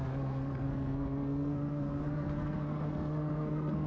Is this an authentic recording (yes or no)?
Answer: no